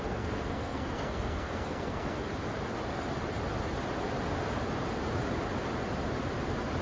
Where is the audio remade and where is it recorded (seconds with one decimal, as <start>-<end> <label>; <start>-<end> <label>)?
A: 0.0-2.3 remade; 2.3-6.8 recorded